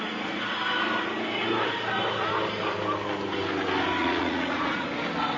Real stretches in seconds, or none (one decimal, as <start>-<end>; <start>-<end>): 0.0-4.0; 4.9-5.4